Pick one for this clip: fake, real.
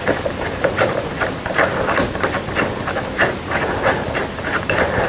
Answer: real